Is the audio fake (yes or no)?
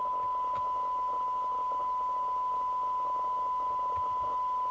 no